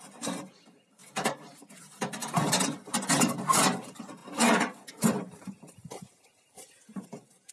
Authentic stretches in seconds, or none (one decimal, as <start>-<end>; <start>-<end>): 2.2-2.9; 4.2-4.9